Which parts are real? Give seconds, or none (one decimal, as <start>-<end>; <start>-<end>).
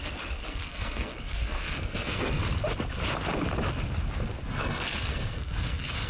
2.4-4.5